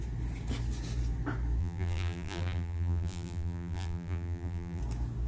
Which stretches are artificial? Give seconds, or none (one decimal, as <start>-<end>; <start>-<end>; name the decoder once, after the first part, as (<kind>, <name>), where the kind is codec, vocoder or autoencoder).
1.6-4.8 (vocoder, BigVGAN v2)

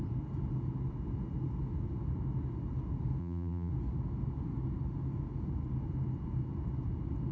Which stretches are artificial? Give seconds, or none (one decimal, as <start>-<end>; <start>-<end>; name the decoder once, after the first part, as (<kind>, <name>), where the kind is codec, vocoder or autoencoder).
3.2-3.7 (vocoder, BigVGAN v2)